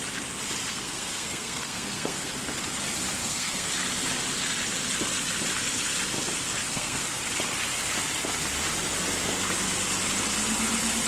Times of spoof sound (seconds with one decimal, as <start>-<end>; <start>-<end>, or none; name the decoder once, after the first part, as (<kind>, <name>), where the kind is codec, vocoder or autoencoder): 0.7-2.3 (codec, SNAC); 3.2-3.7; 6.6-7.2